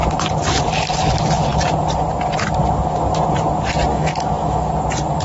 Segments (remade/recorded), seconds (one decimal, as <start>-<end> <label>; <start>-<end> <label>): 0.0-3.9 recorded; 3.9-4.7 remade; 4.7-5.2 recorded

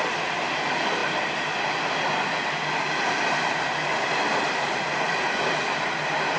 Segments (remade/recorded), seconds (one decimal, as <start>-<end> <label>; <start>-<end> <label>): 0.0-6.4 recorded